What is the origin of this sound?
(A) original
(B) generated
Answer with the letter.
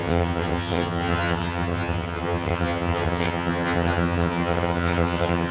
B